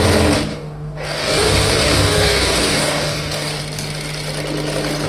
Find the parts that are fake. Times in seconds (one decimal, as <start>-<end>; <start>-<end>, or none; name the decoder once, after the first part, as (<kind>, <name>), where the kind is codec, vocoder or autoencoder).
0.5-3.6 (codec, DAC)